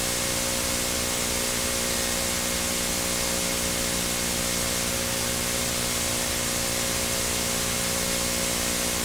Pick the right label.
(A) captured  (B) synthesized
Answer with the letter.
A